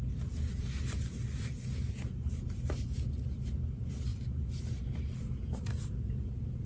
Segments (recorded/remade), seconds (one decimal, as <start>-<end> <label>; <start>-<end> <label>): 0.0-6.7 recorded